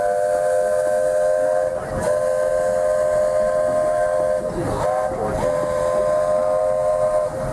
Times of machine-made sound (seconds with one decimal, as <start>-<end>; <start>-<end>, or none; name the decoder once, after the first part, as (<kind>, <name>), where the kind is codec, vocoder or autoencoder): none